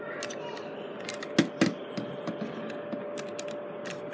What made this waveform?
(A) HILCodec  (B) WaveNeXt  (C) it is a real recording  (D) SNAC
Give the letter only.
C